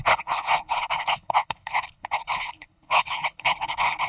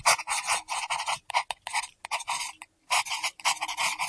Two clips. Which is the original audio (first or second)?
second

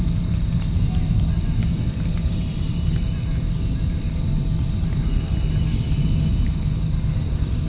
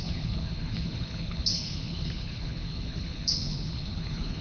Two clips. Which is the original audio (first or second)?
first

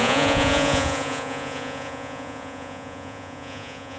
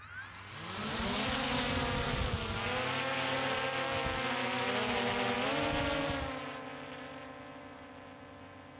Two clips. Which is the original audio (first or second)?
second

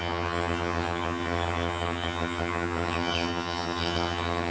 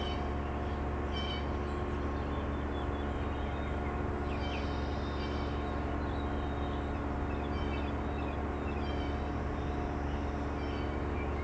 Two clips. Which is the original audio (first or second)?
second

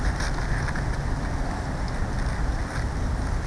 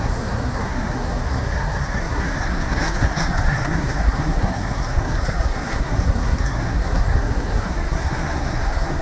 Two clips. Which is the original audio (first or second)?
first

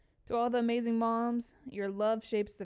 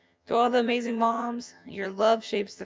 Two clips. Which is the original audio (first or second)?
first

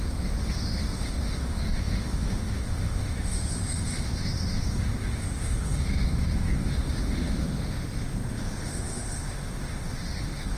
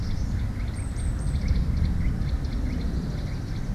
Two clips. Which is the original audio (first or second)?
second